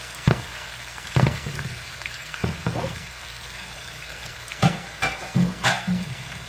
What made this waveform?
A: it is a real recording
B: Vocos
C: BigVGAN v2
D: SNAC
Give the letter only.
D